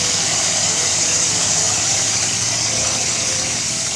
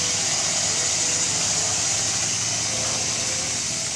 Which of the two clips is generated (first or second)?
first